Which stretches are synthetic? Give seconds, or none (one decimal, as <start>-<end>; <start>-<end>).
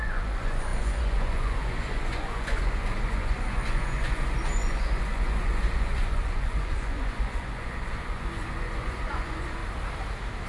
0.0-9.6